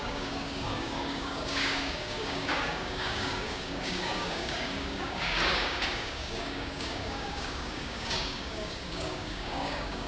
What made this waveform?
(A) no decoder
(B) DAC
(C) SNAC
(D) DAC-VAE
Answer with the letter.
B